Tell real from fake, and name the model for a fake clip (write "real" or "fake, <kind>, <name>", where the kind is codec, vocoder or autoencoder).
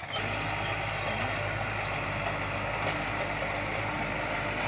real